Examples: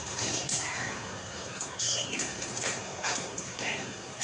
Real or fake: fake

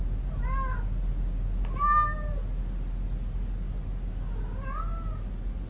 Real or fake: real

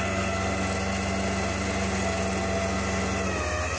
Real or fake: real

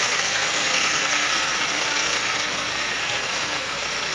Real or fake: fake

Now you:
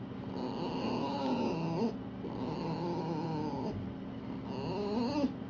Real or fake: real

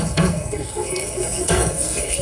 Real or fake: fake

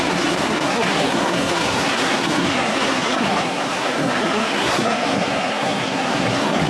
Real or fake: fake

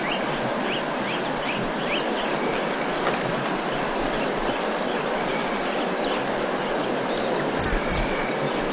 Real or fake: real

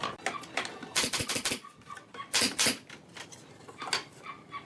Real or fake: real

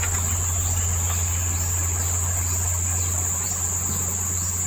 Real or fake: real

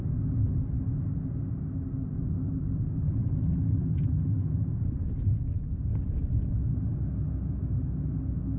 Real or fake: real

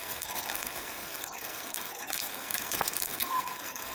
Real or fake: fake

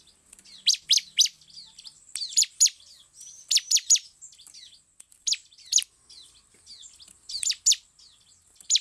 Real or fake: real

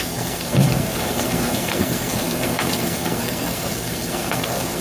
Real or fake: fake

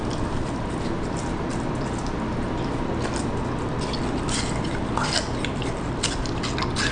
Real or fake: real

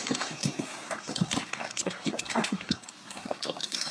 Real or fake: fake